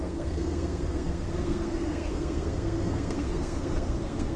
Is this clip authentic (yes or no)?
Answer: no